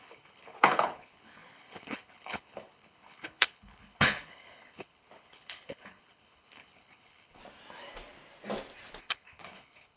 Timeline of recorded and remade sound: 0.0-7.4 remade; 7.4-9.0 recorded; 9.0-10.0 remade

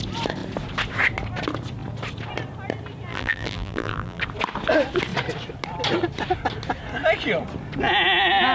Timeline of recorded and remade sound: 0.0-3.1 recorded; 3.1-4.2 remade; 4.2-8.5 recorded